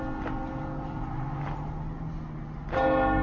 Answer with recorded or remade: recorded